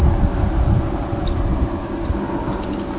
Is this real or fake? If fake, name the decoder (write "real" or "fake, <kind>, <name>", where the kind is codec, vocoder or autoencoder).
real